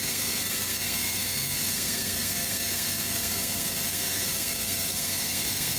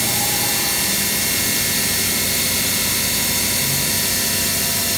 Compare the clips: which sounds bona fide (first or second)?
second